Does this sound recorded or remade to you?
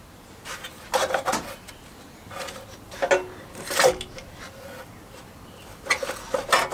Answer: recorded